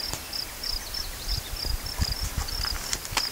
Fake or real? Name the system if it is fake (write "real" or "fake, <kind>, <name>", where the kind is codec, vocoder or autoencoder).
fake, vocoder, BigVGAN v2